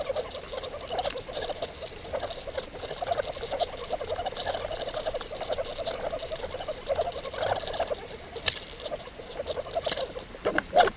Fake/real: real